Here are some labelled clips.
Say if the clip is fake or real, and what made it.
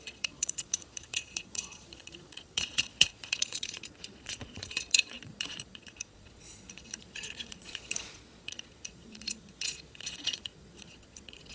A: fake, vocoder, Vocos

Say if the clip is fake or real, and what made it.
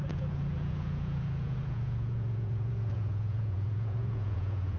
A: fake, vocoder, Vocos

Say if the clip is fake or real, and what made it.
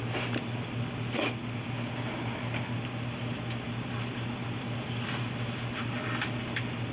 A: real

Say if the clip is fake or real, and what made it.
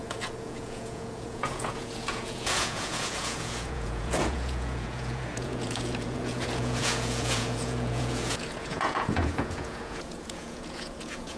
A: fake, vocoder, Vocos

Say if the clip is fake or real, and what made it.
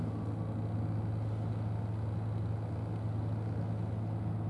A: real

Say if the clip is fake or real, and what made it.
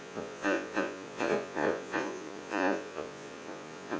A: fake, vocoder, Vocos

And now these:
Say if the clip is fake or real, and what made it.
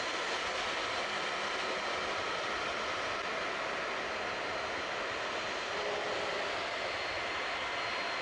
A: real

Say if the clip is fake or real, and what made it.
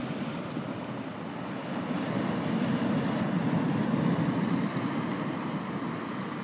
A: real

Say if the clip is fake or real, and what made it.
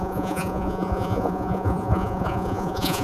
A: fake, vocoder, Vocos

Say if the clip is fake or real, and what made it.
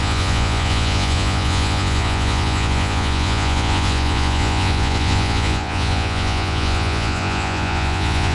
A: fake, vocoder, Vocos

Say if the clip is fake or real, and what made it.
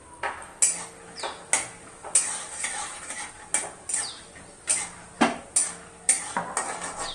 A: real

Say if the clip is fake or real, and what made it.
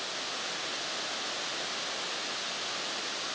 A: real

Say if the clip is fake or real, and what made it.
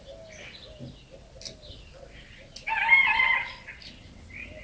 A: real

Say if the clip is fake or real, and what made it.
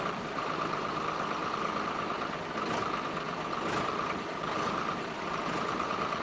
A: real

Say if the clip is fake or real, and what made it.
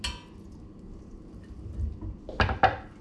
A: real